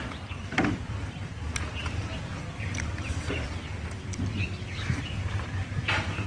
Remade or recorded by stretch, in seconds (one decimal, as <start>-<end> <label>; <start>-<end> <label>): 0.0-4.3 remade; 4.3-5.6 recorded; 5.6-6.3 remade